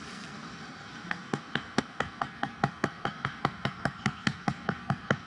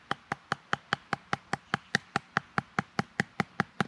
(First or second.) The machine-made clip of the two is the first